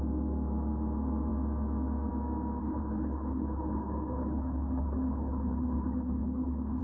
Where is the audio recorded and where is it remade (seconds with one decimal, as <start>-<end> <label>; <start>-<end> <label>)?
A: 0.0-2.6 recorded; 2.6-6.8 remade